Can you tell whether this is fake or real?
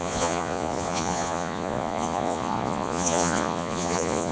fake